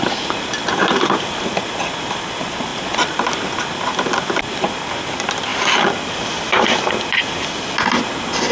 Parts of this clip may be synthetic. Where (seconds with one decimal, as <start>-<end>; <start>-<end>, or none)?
none